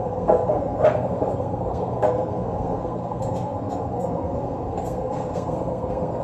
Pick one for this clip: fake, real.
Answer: fake